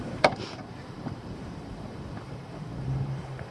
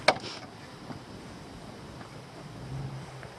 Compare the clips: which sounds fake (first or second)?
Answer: first